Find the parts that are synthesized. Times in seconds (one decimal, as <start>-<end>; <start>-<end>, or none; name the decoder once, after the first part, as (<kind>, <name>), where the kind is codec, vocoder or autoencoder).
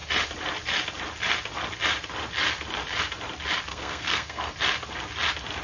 3.7-4.5 (codec, SNAC)